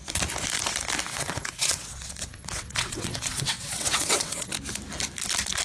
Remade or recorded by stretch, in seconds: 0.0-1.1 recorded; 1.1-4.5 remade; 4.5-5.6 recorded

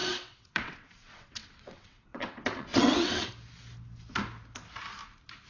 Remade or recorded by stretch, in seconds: 0.0-3.3 remade; 3.3-5.5 recorded